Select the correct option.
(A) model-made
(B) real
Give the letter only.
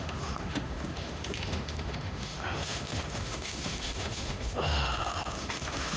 A